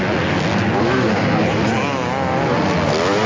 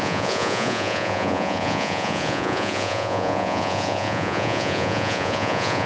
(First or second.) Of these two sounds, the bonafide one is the first